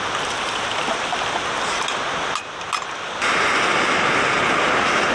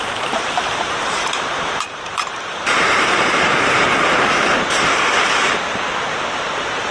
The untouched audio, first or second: first